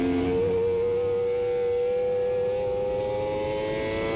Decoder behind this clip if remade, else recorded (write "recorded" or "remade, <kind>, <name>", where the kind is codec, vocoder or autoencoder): recorded